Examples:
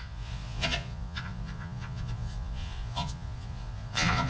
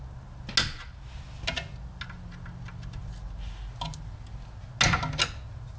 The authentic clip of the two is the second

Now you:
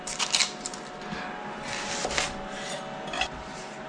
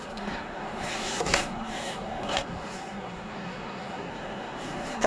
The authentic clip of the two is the first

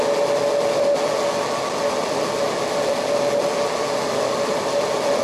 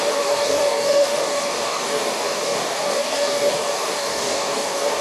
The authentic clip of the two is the first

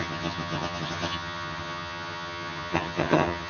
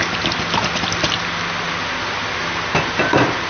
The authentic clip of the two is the second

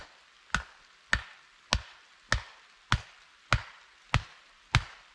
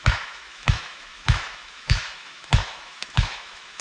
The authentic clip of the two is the first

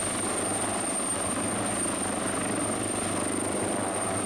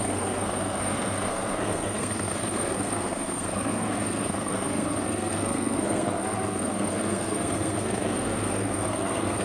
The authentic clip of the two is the first